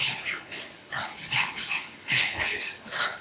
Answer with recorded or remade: remade